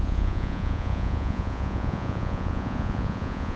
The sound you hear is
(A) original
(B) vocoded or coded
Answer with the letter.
B